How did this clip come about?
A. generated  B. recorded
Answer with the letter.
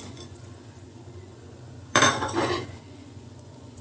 A